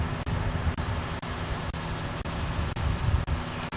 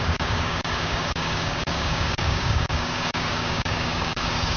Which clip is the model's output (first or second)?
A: second